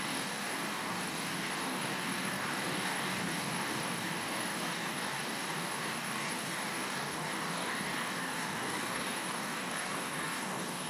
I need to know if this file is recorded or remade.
remade